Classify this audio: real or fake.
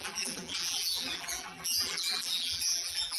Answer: fake